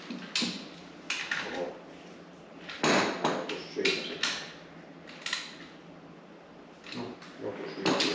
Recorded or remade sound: recorded